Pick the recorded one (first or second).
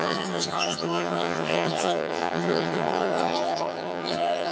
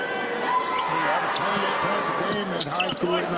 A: second